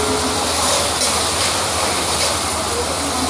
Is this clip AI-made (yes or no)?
no